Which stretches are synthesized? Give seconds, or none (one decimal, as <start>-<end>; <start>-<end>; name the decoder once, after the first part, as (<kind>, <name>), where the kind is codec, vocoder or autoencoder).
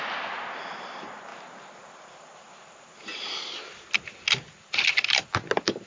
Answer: none